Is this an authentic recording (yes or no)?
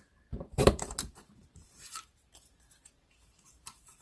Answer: no